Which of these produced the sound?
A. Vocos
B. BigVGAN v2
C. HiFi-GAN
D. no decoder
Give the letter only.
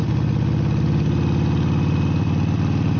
D